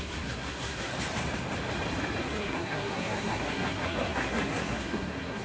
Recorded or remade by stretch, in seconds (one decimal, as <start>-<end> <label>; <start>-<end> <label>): 0.0-0.9 remade; 0.9-2.2 recorded; 2.2-5.4 remade